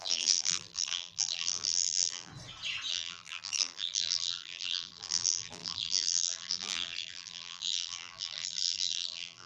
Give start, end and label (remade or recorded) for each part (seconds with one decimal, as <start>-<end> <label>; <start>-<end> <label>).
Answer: 0.0-2.3 remade; 2.3-2.9 recorded; 2.9-9.5 remade